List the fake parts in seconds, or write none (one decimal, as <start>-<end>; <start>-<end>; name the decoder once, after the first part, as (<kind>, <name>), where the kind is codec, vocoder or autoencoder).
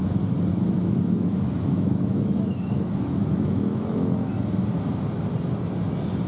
0.5-4.3 (autoencoder, DAC-VAE)